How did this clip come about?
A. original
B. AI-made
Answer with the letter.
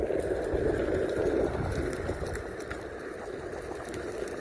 A